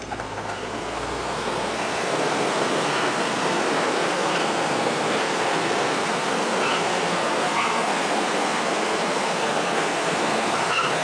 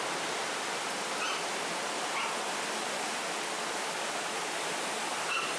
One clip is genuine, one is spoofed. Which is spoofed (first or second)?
first